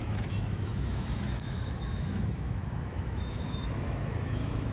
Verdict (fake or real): fake